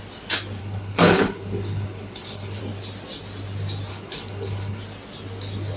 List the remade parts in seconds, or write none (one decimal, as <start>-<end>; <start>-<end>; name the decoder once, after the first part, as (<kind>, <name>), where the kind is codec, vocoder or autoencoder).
0.6-2.6 (codec, HILCodec); 3.9-4.8